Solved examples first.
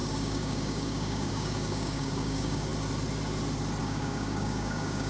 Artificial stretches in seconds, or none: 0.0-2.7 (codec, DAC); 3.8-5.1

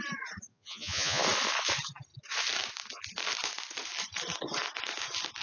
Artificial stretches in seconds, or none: 0.5-1.2 (vocoder, Vocos)

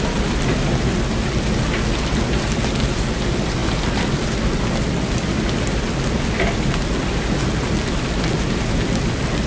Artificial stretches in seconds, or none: none

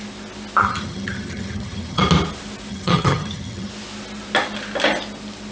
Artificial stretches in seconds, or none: 0.6-2.0 (vocoder, HiFi-GAN); 2.7-3.7

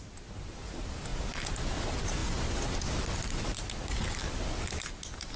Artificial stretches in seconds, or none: none

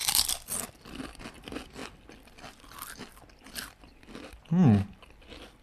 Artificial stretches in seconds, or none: 0.0-1.8 (vocoder, BigVGAN v2); 3.4-5.6

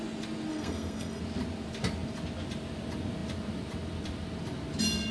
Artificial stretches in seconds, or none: 0.5-1.2 (codec, SNAC)